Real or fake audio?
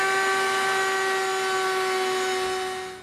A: real